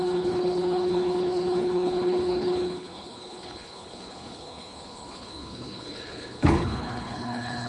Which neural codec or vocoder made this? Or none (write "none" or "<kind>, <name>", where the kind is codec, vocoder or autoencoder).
codec, HILCodec